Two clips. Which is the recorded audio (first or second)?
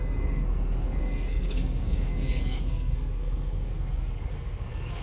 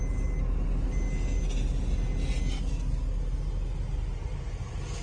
second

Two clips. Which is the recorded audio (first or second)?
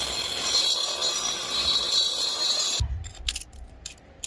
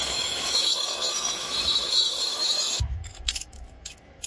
first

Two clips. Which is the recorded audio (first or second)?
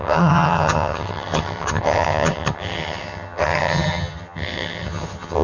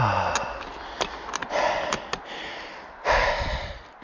second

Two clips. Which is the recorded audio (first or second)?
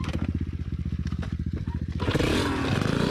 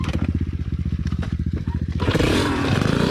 first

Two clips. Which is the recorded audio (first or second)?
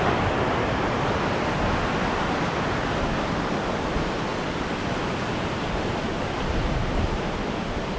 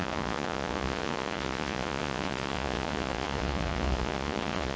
first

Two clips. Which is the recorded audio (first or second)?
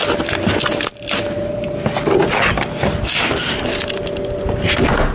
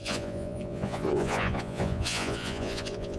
first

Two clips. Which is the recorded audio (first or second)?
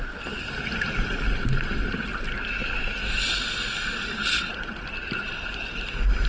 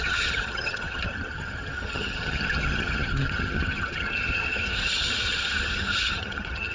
first